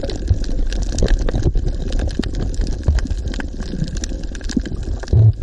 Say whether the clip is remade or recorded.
recorded